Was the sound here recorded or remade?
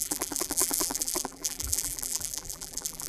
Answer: remade